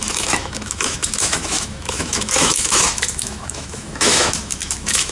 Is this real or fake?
fake